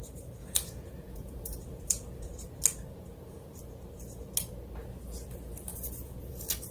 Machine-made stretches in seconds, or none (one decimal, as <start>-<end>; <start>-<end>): 0.4-2.3; 5.7-6.7